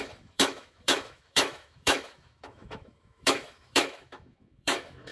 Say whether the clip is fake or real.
fake